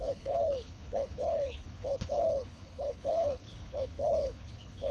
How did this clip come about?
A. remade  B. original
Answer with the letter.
A